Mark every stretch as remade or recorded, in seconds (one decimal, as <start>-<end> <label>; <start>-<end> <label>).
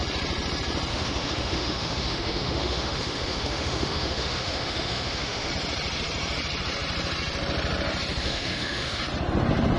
0.0-0.9 recorded; 0.9-5.5 remade; 5.5-8.2 recorded; 8.2-9.0 remade; 9.0-9.8 recorded